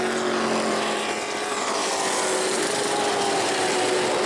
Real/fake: real